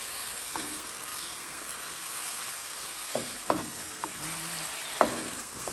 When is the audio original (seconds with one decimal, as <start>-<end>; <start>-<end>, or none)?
4.2-5.1